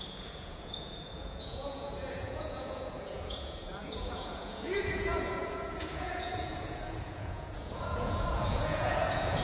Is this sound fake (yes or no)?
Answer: yes